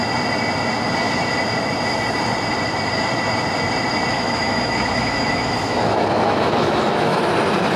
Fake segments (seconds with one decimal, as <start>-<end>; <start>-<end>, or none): 4.1-7.2